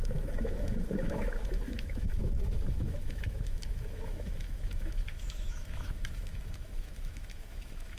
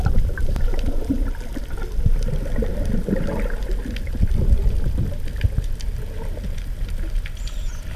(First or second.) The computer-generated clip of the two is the first